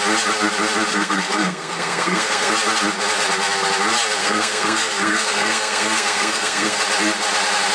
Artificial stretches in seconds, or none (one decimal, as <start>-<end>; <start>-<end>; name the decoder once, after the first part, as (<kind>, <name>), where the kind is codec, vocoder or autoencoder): 0.9-2.5 (codec, SNAC); 4.2-6.8